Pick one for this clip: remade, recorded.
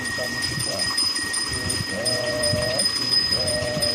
remade